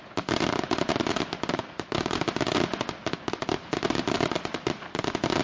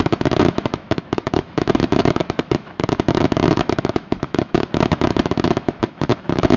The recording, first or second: first